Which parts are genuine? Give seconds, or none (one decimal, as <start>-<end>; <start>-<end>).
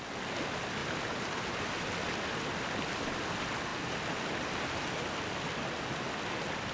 0.0-0.8; 1.6-6.7